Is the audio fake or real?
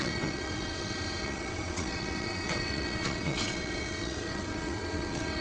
fake